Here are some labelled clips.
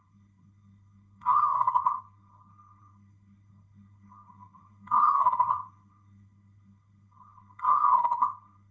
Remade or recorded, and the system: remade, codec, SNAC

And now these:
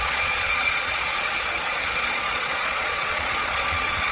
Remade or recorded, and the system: remade, vocoder, Vocos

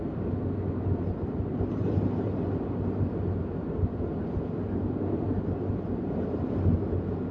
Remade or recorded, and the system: recorded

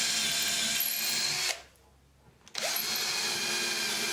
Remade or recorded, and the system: recorded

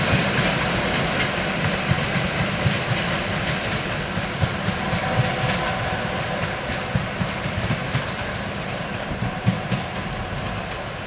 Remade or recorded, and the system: recorded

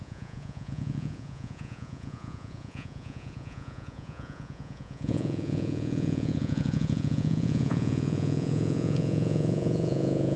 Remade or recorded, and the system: remade, vocoder, Vocos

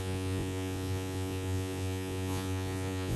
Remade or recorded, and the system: remade, vocoder, Vocos